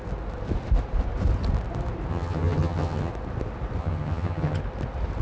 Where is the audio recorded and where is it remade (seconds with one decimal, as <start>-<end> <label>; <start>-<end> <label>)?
0.0-2.1 recorded; 2.1-3.1 remade; 3.1-3.8 recorded; 3.8-4.6 remade; 4.6-5.2 recorded